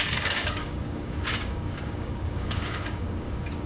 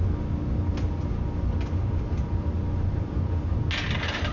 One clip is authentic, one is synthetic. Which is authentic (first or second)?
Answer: second